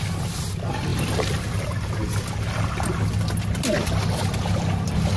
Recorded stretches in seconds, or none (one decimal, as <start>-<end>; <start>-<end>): 0.0-5.2